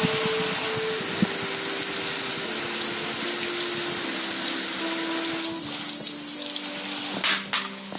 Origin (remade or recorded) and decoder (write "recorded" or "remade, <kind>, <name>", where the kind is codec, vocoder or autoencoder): recorded